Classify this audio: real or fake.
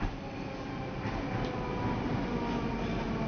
real